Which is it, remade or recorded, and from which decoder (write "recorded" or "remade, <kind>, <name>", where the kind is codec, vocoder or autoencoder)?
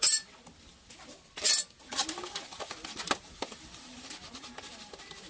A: recorded